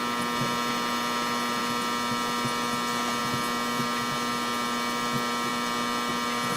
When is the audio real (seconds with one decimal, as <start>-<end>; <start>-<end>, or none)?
0.0-6.6